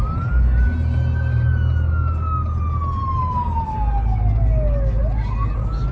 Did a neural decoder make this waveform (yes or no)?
no